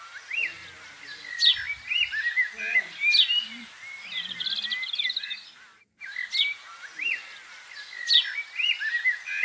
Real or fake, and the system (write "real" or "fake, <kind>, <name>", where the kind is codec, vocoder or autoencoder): real